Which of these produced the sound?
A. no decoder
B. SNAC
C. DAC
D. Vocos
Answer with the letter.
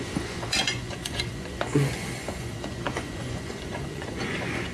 D